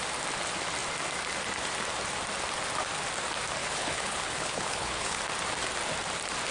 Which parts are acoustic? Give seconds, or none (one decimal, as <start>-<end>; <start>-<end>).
0.0-3.6; 5.2-6.5